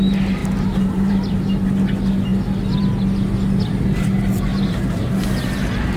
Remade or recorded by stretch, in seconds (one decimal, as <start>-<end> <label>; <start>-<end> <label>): 0.0-0.4 recorded; 0.4-1.4 remade; 1.4-4.5 recorded; 4.5-5.1 remade; 5.1-6.0 recorded